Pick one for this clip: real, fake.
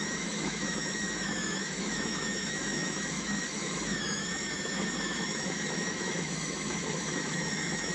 fake